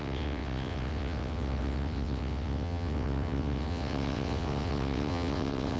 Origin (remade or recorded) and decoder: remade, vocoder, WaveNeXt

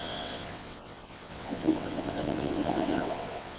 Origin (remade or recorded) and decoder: remade, vocoder, WaveNeXt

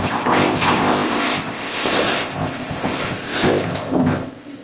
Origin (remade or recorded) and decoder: remade, codec, ZipCodec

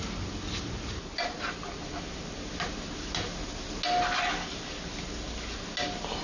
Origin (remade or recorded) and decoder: recorded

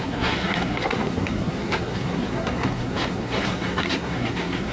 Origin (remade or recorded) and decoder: remade, codec, SNAC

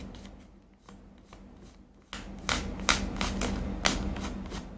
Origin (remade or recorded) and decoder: recorded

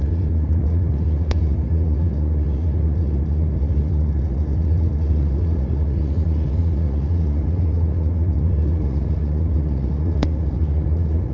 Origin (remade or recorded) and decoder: remade, vocoder, Vocos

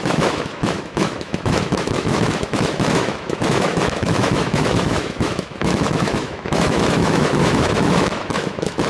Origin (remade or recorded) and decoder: remade, autoencoder, DAC-VAE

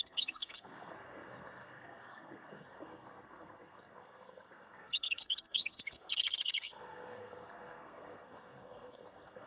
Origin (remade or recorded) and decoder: remade, codec, SNAC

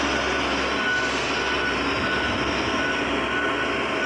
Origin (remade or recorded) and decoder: recorded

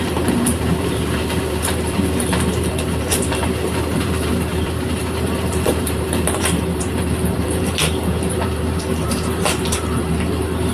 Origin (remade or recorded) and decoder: remade, vocoder, BigVGAN v2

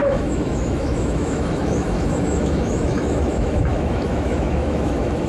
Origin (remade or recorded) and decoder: remade, autoencoder, DAC-VAE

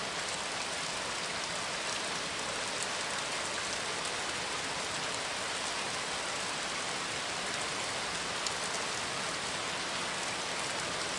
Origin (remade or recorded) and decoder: recorded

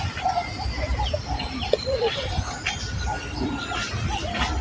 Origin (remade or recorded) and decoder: recorded